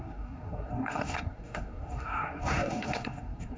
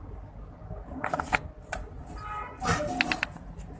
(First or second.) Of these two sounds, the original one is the second